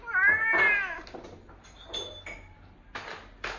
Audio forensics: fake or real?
real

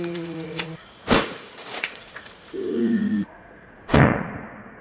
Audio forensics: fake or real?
fake